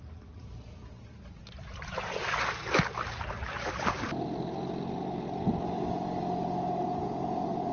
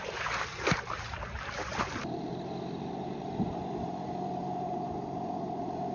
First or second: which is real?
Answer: first